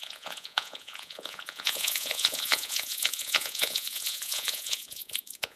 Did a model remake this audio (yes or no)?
yes